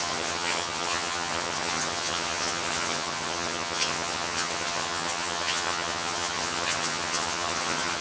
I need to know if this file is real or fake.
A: fake